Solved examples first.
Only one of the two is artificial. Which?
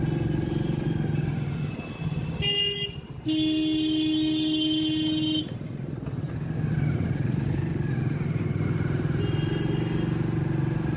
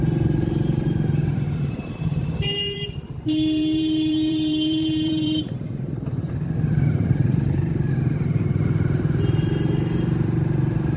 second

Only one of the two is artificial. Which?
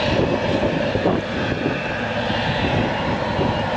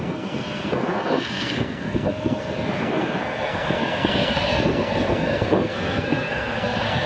second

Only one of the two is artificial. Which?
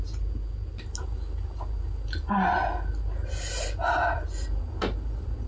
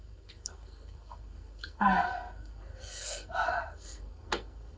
second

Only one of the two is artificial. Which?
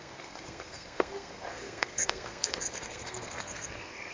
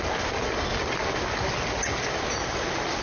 first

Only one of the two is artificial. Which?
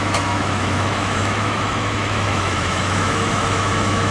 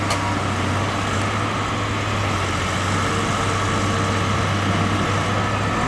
first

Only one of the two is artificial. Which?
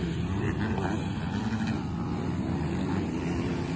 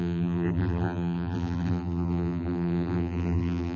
second